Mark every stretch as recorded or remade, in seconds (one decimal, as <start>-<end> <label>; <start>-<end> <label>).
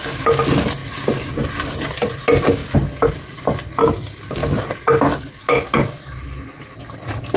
0.0-7.4 recorded